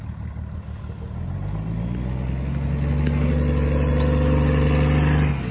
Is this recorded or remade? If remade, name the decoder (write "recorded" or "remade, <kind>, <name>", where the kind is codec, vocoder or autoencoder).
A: recorded